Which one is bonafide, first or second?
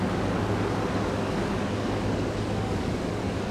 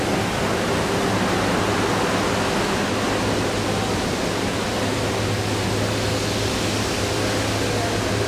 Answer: second